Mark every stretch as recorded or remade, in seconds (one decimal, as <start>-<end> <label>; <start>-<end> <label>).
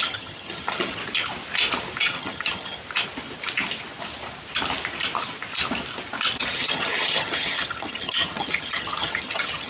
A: 0.0-1.0 remade; 1.0-2.0 recorded; 2.0-2.8 remade; 2.8-6.5 recorded; 6.5-9.7 remade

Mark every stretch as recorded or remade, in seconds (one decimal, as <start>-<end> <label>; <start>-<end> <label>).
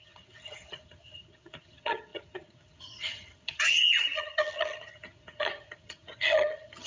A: 0.0-6.9 remade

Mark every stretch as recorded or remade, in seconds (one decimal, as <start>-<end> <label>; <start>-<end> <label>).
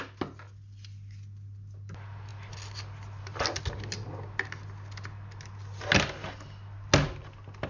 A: 0.0-7.7 recorded